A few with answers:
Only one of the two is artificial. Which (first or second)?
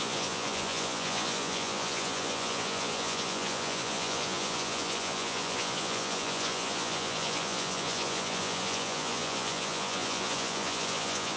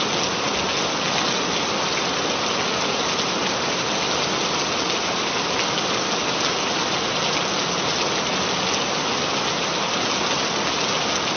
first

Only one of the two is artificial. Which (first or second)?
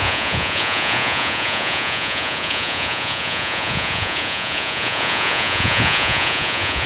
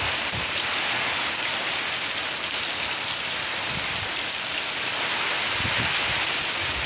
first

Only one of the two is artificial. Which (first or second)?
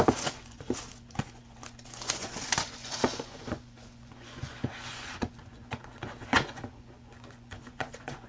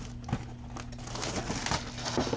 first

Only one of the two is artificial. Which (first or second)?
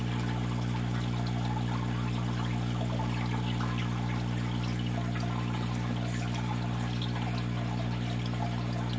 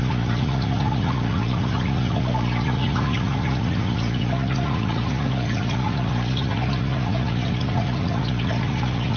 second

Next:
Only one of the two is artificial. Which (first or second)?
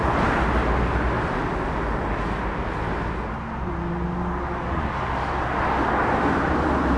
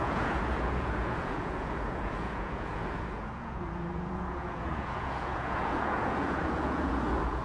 second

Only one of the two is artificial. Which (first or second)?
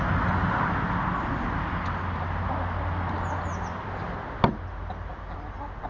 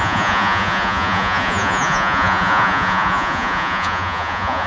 second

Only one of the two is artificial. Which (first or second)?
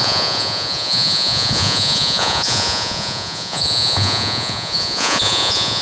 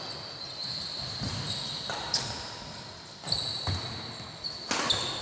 first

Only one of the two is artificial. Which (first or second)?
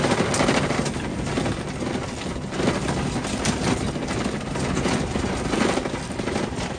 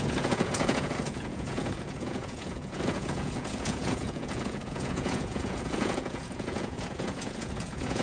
second